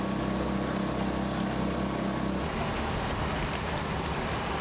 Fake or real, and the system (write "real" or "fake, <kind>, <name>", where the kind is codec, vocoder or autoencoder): real